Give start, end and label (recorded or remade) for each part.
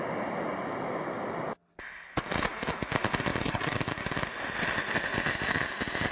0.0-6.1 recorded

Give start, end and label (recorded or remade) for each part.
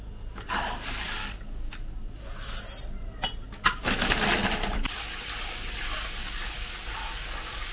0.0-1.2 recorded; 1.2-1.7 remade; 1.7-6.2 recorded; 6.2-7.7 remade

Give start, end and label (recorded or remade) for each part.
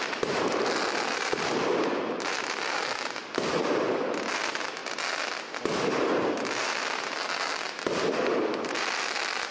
0.0-9.5 recorded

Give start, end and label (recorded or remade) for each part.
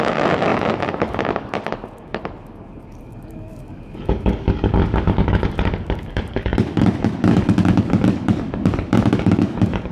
0.0-9.9 remade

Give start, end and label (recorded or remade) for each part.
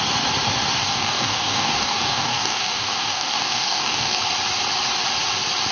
0.0-0.8 recorded; 0.8-4.2 remade; 4.2-5.7 recorded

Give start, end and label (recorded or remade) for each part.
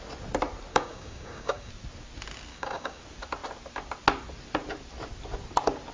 0.0-0.7 recorded; 0.7-1.7 remade; 1.7-2.5 recorded; 2.5-3.0 remade; 3.0-5.9 recorded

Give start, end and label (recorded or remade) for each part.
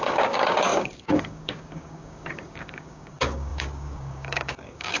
0.0-5.0 remade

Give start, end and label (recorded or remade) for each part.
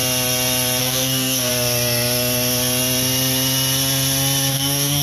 0.0-0.8 recorded; 0.8-1.5 remade; 1.5-4.5 recorded; 4.5-5.0 remade